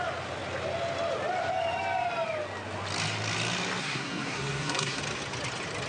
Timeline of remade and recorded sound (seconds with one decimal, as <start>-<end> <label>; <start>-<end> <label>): 0.0-3.8 recorded; 3.8-5.0 remade; 5.0-5.9 recorded